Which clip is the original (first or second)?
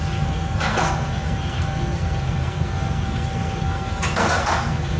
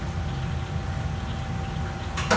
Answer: second